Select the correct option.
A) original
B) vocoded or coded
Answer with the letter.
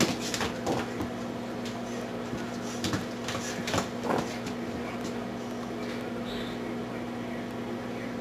A